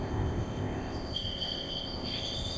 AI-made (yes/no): yes